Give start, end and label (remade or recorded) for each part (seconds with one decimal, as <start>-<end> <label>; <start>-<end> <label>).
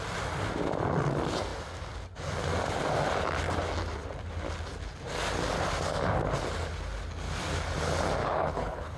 0.0-8.2 recorded; 8.2-9.0 remade